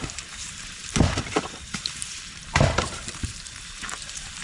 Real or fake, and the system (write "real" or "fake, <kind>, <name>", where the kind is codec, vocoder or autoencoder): fake, vocoder, BigVGAN v2